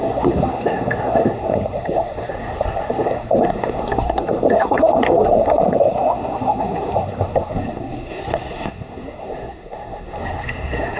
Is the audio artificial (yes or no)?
yes